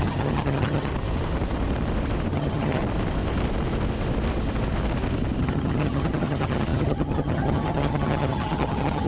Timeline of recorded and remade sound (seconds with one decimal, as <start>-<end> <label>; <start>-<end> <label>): 0.0-0.9 remade; 0.9-2.3 recorded; 2.3-2.8 remade; 2.8-5.4 recorded; 5.4-9.1 remade